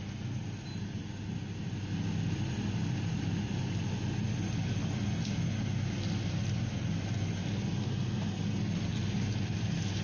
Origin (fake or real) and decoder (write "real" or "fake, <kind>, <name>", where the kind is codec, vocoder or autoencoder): real